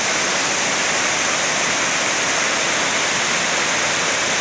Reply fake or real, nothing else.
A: real